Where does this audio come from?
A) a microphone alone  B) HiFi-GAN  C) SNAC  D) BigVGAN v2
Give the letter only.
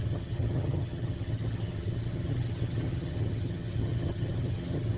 B